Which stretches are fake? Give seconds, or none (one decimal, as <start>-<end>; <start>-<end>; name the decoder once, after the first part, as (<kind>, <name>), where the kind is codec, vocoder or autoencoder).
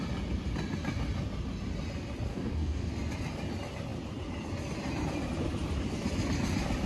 2.3-2.9 (codec, DAC)